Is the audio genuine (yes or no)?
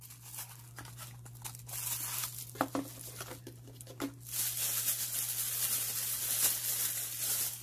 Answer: yes